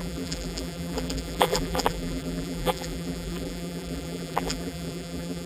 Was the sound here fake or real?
fake